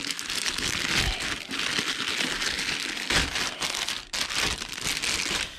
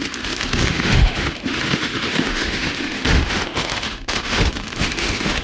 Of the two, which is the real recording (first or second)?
first